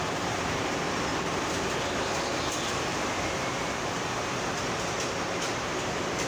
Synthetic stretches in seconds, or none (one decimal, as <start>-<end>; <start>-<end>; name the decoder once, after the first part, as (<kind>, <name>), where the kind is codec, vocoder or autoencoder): 0.0-1.1 (vocoder, BigVGAN v2); 2.2-6.3